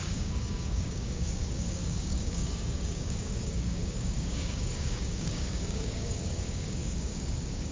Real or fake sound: fake